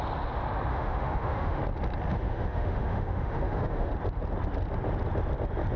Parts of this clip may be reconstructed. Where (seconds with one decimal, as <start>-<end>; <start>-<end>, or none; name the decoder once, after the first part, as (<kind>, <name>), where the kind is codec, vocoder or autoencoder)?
0.7-1.6 (autoencoder, DAC-VAE); 2.1-3.9